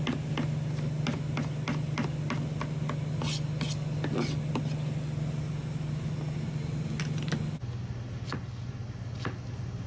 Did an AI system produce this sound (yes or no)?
no